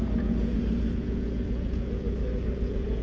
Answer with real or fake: fake